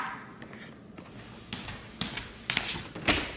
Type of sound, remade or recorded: recorded